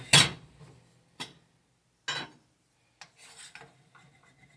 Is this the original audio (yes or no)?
yes